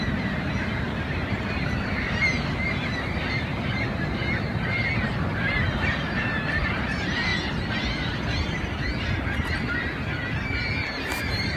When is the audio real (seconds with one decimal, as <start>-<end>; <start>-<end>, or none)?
7.3-11.2